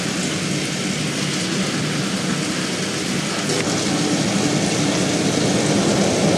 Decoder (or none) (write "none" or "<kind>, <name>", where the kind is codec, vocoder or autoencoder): none